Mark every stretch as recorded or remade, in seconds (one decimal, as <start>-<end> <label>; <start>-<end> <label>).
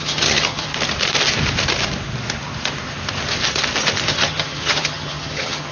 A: 0.0-0.7 remade; 0.7-4.1 recorded; 4.1-5.7 remade